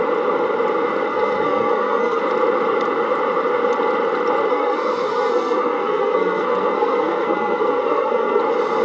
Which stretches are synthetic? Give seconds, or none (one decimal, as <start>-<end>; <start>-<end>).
1.1-2.2; 4.5-8.4